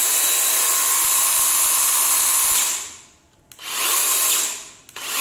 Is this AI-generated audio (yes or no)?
no